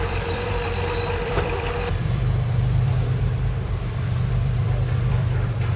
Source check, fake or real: fake